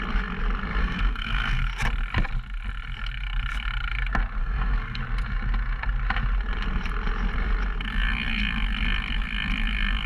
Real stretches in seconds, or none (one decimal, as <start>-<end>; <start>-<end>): 0.0-0.8; 1.6-4.4; 5.0-10.1